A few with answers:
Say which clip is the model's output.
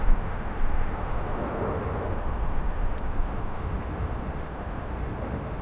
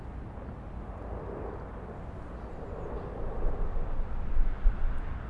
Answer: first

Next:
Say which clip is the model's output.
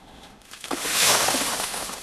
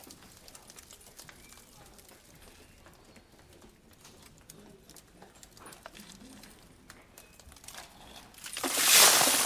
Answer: first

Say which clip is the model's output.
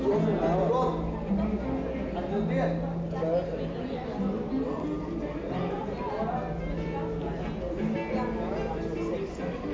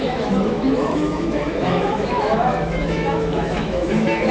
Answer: second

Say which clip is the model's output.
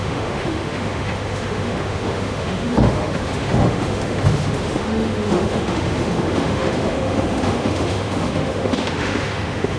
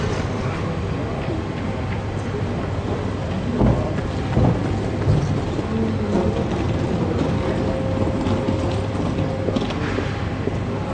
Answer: first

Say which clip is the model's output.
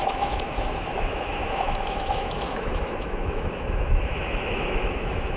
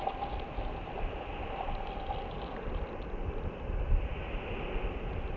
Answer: first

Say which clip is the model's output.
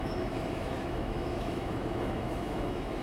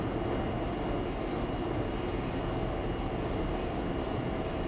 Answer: first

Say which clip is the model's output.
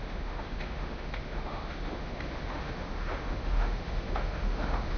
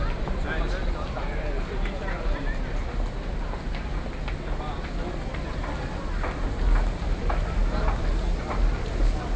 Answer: first